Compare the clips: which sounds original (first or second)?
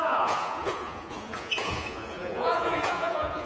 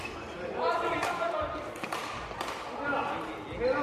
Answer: second